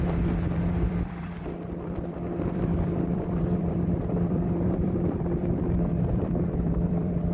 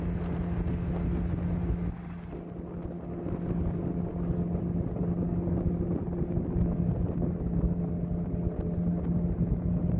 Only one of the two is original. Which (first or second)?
second